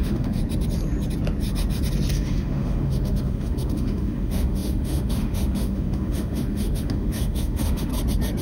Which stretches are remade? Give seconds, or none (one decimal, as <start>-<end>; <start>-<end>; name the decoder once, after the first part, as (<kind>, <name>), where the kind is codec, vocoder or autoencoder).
0.0-0.4 (autoencoder, DAC-VAE); 2.1-7.9